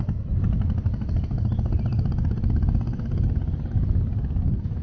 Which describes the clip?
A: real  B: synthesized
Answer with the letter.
A